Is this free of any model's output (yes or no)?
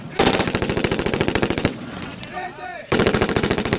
no